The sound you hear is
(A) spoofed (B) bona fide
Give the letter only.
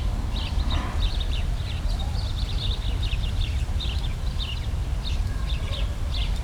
A